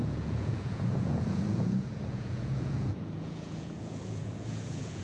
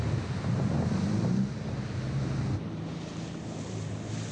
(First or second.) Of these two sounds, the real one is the second